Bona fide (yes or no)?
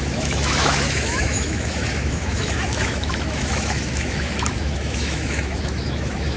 no